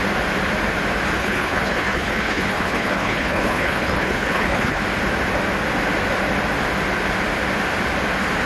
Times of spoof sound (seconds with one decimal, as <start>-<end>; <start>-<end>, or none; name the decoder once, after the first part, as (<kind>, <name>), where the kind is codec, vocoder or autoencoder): 1.2-4.8 (codec, HILCodec)

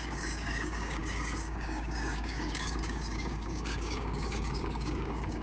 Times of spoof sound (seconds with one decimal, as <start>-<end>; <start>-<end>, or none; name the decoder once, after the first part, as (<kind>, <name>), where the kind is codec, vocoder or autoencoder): 0.0-5.4 (codec, DAC)

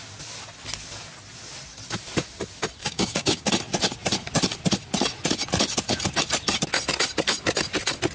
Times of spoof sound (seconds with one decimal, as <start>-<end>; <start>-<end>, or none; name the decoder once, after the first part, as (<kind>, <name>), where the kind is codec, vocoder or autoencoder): 2.8-3.5 (codec, DAC)